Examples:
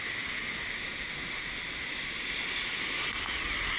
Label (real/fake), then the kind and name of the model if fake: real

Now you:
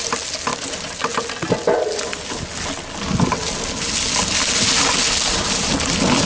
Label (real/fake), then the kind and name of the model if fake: real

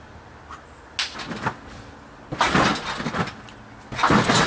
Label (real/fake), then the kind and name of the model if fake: real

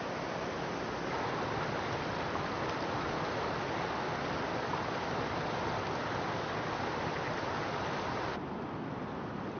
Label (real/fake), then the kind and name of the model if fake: real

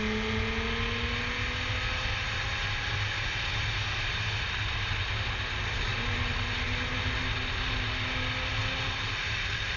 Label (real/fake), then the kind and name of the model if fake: real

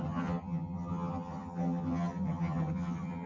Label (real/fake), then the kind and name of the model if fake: fake, vocoder, HiFi-GAN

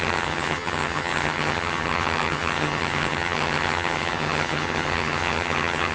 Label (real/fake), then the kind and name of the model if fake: fake, vocoder, HiFi-GAN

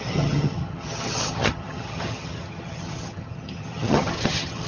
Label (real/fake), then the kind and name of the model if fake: fake, vocoder, HiFi-GAN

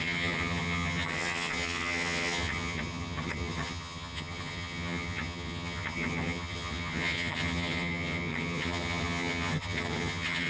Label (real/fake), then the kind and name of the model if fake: fake, vocoder, HiFi-GAN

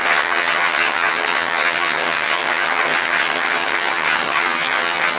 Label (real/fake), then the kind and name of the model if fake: fake, vocoder, HiFi-GAN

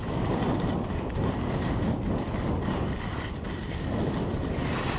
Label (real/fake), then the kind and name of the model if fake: real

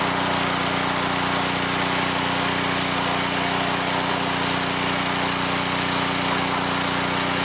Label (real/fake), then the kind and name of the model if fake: real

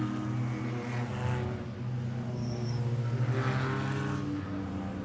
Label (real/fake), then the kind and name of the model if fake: real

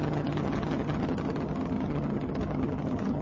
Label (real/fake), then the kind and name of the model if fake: fake, vocoder, HiFi-GAN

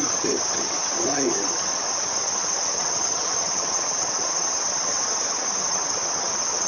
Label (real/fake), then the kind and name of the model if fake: fake, vocoder, HiFi-GAN